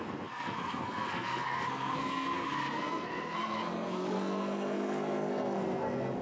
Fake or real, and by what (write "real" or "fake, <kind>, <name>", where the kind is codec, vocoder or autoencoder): fake, codec, SNAC